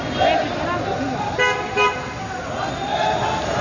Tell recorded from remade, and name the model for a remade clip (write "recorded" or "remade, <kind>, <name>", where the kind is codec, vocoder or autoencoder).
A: recorded